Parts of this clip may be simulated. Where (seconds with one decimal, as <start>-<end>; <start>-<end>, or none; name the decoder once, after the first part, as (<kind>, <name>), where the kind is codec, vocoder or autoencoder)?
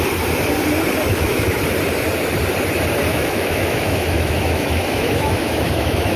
1.1-1.6 (autoencoder, DAC-VAE); 3.1-6.2